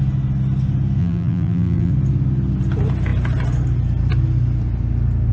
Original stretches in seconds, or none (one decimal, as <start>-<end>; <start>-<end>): 0.0-1.0; 1.9-5.3